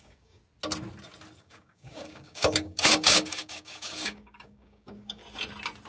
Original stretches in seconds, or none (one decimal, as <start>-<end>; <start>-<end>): 0.4-1.4; 5.2-5.9